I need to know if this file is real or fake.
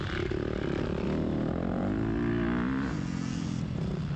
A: real